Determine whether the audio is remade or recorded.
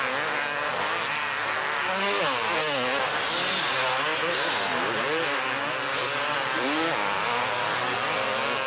recorded